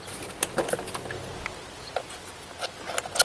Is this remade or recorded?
recorded